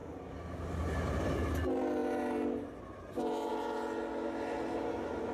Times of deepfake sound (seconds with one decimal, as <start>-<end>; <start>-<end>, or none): none